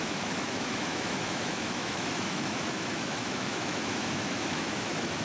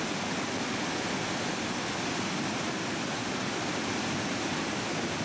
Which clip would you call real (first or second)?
second